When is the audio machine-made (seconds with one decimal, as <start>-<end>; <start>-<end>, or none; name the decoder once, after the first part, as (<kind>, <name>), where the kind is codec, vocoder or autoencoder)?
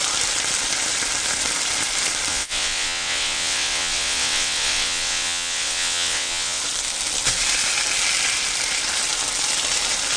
2.3-6.6 (vocoder, WaveNeXt)